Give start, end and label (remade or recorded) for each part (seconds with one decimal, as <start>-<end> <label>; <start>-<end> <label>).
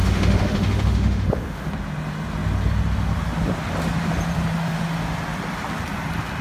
0.0-1.7 remade; 1.7-6.4 recorded